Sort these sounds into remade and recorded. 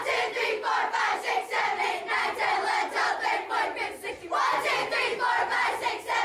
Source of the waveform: recorded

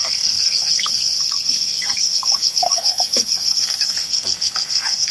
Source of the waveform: remade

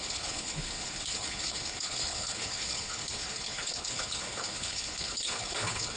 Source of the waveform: remade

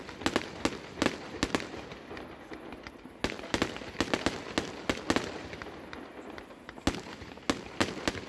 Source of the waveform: recorded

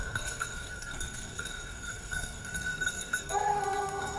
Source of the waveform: remade